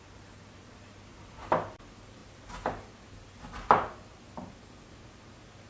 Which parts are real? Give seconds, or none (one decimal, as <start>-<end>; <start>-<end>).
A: 0.0-1.1; 1.8-5.7

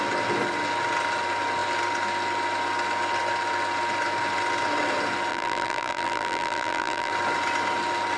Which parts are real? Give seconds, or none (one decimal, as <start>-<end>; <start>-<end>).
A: 0.0-5.3; 7.1-8.2